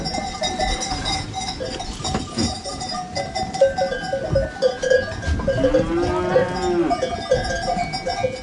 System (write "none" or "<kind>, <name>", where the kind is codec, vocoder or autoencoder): none